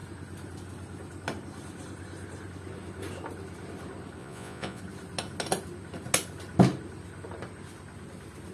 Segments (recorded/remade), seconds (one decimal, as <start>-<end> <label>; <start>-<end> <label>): 0.0-4.2 recorded; 4.2-4.8 remade; 4.8-8.5 recorded